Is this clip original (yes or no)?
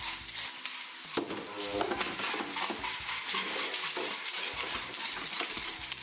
yes